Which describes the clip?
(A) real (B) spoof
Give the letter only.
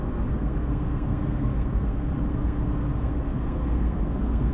B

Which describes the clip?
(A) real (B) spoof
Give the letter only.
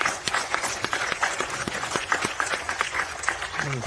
B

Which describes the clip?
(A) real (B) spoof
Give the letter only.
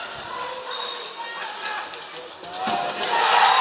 A